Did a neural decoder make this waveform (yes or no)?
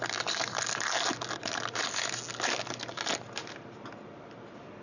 no